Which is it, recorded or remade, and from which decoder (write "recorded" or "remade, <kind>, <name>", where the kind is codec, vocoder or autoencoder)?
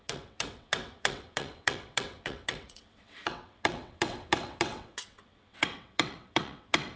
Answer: remade, vocoder, WaveNeXt